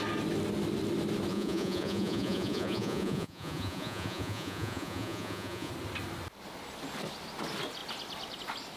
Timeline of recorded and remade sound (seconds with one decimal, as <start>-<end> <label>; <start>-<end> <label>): 0.0-1.3 recorded; 1.3-5.7 remade; 5.7-8.8 recorded